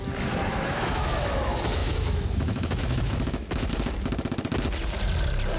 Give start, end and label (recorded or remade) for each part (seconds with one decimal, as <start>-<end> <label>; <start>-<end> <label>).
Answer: 0.0-0.5 recorded; 0.5-1.2 remade; 1.2-1.8 recorded; 1.8-3.7 remade; 3.7-5.6 recorded

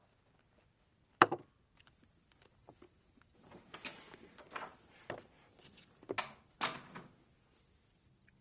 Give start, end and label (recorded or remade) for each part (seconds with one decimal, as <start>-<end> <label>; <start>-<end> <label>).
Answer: 0.0-8.4 recorded

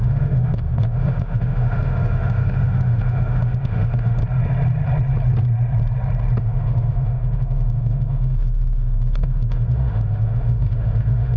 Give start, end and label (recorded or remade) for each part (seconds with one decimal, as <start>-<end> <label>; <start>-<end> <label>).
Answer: 0.0-4.2 remade; 4.2-6.4 recorded; 6.4-11.4 remade

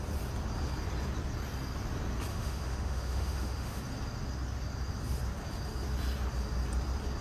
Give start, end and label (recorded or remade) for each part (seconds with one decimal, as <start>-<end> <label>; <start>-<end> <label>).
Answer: 0.0-2.3 recorded; 2.3-3.8 remade; 3.8-7.2 recorded

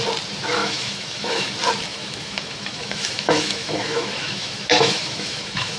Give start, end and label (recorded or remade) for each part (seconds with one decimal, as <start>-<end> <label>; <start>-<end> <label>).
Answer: 0.0-0.6 recorded; 0.6-1.5 remade; 1.5-1.9 recorded; 1.9-5.8 remade